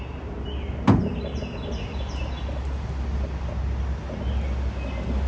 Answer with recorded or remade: recorded